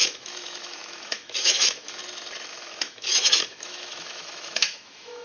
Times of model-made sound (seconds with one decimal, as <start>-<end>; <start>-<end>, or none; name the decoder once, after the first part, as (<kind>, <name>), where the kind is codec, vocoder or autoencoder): 0.0-2.0 (autoencoder, DAC-VAE); 2.5-5.2